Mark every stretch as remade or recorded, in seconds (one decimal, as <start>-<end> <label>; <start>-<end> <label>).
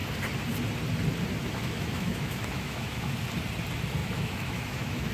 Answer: 0.0-1.4 recorded; 1.4-3.2 remade; 3.2-4.0 recorded; 4.0-5.1 remade